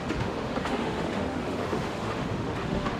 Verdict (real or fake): fake